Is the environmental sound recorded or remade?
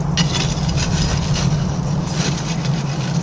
recorded